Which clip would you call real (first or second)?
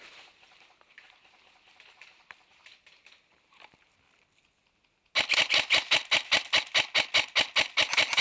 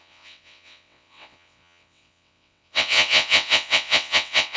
first